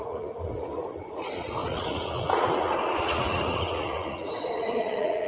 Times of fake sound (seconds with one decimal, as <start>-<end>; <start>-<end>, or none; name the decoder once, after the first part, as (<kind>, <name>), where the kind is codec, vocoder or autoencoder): 0.0-5.3 (vocoder, Vocos)